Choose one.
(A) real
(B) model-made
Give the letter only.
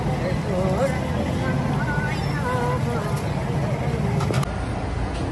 A